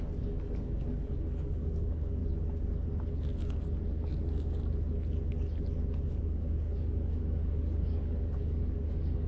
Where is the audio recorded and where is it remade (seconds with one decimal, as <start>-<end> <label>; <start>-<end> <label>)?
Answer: 0.0-2.2 remade; 2.2-6.1 recorded; 6.1-9.3 remade